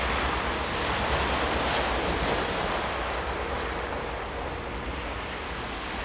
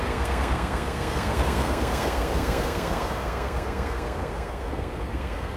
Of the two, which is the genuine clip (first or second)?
first